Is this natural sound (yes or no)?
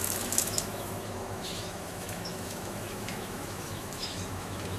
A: no